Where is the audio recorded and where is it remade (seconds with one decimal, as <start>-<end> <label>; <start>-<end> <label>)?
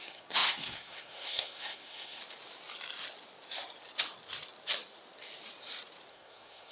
0.0-2.2 remade; 2.2-6.1 recorded; 6.1-6.7 remade